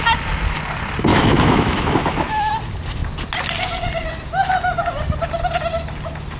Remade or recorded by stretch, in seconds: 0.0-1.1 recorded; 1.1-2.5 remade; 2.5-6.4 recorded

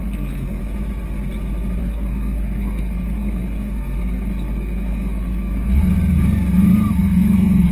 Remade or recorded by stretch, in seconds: 0.0-0.6 remade; 0.6-1.8 recorded; 1.8-5.9 remade; 5.9-6.9 recorded; 6.9-7.7 remade

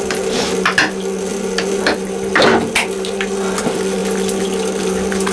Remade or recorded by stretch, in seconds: 0.0-5.3 recorded

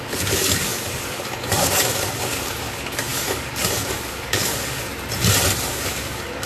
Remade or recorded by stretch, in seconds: 0.0-4.9 remade; 4.9-5.7 recorded; 5.7-6.5 remade

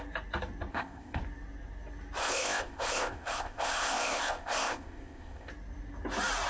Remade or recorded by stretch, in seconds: 0.0-0.7 recorded; 0.7-1.2 remade; 1.2-2.2 recorded; 2.2-5.5 remade; 5.5-6.5 recorded